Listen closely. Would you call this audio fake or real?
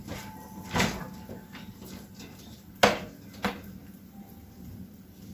real